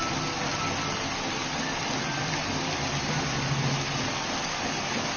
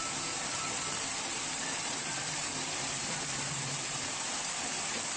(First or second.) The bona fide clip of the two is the first